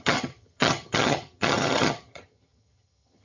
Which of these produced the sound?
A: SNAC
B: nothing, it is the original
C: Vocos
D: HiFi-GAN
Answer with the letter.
D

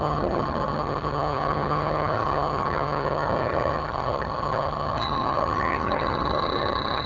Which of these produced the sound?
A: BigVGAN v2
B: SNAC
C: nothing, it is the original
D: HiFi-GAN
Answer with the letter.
D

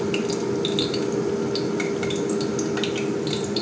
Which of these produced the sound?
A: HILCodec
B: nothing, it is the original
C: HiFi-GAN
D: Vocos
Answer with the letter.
B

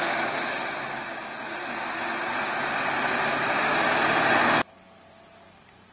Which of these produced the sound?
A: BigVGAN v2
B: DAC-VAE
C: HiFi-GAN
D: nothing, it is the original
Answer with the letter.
D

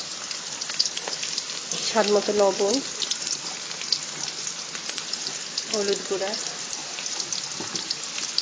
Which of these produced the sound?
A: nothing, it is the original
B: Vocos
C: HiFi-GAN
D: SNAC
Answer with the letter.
A